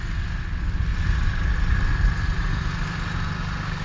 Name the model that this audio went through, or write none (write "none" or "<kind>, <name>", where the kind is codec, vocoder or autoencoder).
none